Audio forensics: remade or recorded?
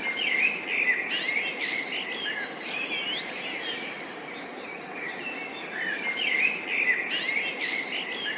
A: recorded